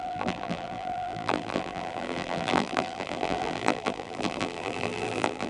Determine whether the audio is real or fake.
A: fake